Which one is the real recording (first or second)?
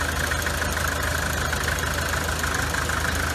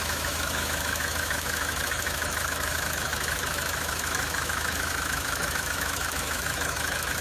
first